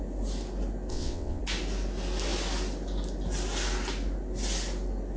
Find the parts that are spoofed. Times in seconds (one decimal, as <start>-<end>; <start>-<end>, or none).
0.9-1.4